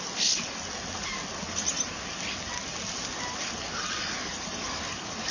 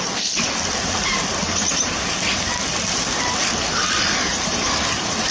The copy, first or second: second